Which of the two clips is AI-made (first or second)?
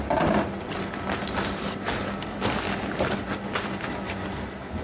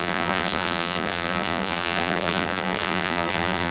second